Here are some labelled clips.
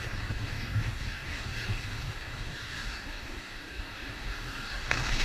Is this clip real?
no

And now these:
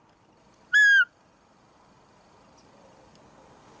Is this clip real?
yes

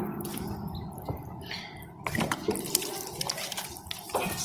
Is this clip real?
yes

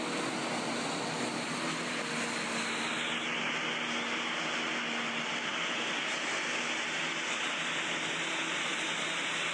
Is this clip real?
yes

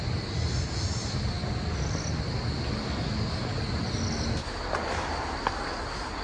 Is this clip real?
yes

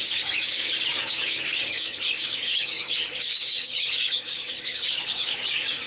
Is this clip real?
no